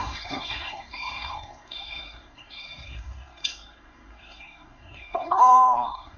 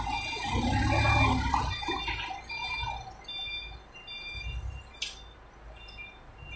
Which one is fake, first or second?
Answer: first